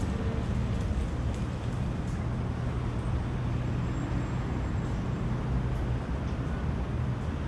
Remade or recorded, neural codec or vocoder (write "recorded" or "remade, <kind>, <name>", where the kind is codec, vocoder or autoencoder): recorded